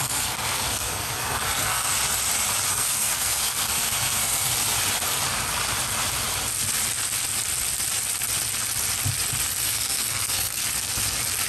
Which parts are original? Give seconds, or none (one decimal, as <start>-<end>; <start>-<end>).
1.9-2.7; 4.5-9.6; 10.6-11.5